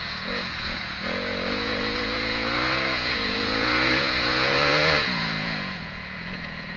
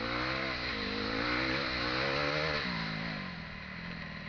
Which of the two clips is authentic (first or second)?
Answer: second